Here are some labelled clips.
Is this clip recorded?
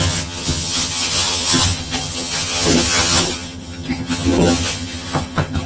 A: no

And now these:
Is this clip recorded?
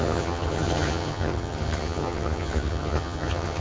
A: no